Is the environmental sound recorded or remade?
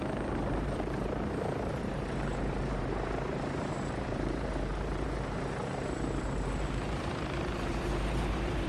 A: remade